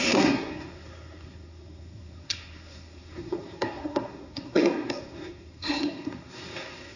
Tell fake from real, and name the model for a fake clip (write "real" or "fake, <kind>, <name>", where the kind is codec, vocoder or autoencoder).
fake, codec, SNAC